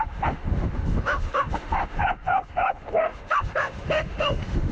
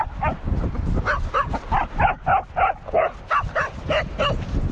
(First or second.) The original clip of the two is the second